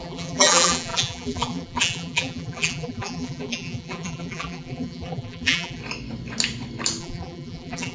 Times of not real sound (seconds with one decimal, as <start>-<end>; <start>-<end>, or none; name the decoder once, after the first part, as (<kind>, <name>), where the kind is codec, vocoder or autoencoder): 0.0-5.8 (vocoder, BigVGAN v2); 7.0-7.9